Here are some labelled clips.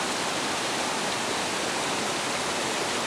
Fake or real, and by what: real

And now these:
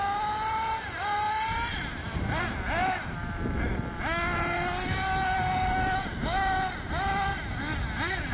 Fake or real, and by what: real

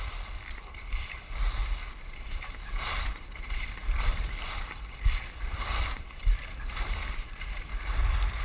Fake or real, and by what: fake, vocoder, BigVGAN v2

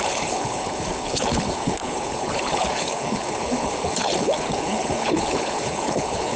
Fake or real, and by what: fake, codec, HILCodec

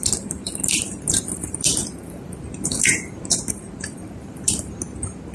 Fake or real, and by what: fake, vocoder, BigVGAN v2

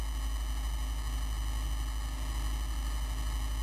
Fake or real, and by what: real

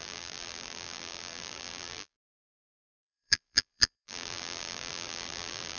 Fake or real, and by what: fake, vocoder, BigVGAN v2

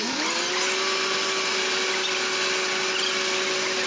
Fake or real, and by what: real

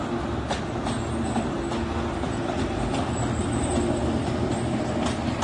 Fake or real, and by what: real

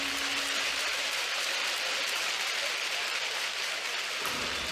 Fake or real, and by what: fake, vocoder, BigVGAN v2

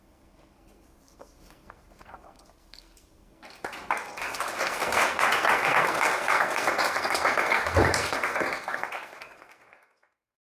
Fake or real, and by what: fake, codec, SNAC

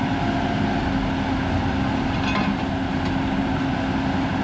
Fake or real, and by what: real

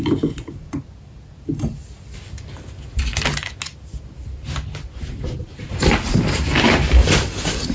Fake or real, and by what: real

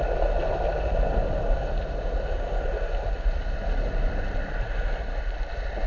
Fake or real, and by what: real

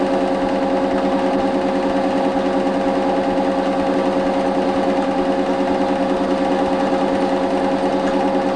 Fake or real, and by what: real